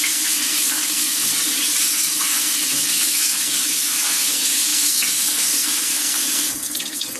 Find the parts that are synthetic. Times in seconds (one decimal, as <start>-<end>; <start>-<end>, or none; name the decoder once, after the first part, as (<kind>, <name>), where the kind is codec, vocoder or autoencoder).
0.0-1.3 (codec, SNAC); 1.8-7.2